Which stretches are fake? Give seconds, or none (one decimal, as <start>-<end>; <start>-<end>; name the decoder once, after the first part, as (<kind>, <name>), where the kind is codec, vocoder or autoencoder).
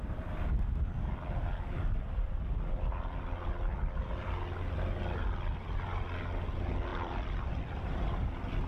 6.9-7.6 (vocoder, BigVGAN v2)